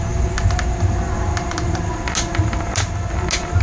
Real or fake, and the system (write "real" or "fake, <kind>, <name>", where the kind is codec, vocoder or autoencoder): real